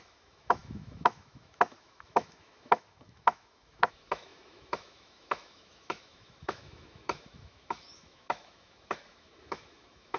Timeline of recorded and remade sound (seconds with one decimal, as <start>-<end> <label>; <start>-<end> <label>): 0.0-10.2 remade